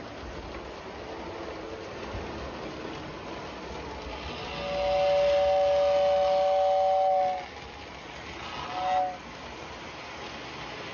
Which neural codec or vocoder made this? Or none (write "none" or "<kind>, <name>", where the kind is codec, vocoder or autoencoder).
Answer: none